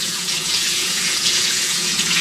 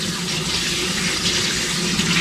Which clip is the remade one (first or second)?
first